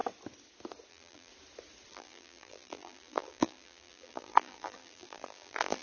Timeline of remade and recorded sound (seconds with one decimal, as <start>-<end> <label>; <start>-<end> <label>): 0.0-0.9 recorded; 0.9-1.3 remade; 1.3-1.9 recorded; 1.9-5.8 remade